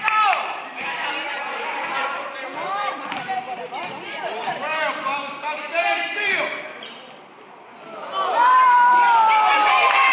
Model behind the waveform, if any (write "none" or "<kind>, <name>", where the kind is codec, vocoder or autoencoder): vocoder, BigVGAN v2